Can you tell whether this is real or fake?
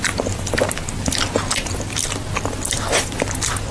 real